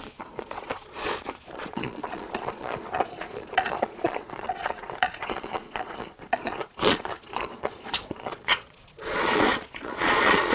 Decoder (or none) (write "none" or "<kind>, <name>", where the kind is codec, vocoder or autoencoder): vocoder, Vocos